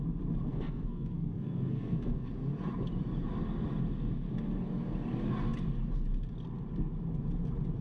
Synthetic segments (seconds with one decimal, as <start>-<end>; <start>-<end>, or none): 0.5-2.3